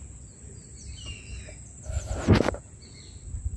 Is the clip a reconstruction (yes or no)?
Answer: no